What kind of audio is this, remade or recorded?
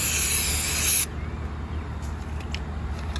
recorded